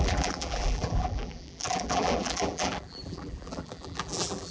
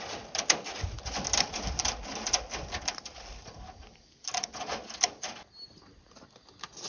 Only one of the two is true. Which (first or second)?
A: second